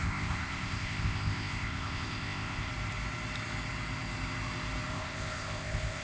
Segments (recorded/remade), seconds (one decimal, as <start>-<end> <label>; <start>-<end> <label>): 0.0-2.7 remade; 2.7-4.9 recorded; 4.9-6.0 remade